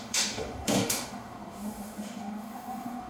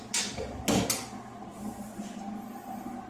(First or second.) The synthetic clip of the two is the first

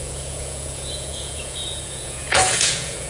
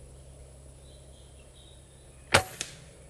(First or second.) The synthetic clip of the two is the first